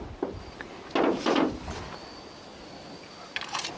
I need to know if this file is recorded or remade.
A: recorded